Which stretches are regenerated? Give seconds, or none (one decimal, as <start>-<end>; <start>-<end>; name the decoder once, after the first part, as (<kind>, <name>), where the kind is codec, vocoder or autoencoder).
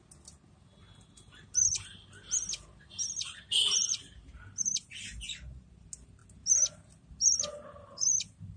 0.8-1.7 (vocoder, BigVGAN v2)